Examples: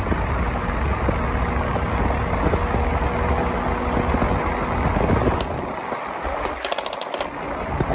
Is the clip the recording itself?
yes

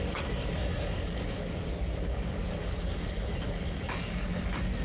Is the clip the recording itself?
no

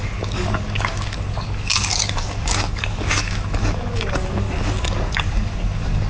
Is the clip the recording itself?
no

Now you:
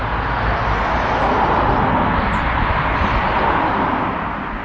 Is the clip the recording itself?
yes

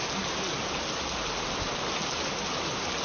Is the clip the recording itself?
yes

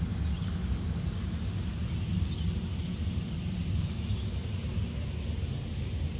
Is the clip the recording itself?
yes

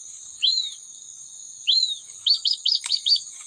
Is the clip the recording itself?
no